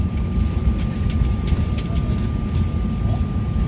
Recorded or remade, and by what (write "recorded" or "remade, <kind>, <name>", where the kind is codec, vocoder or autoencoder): recorded